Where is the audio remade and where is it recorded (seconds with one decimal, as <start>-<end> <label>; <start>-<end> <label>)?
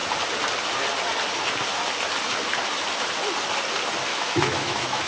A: 0.0-4.1 recorded; 4.1-5.1 remade